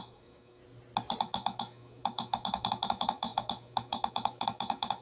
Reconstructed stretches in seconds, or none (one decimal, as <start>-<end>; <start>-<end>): 0.0-0.6; 1.2-5.0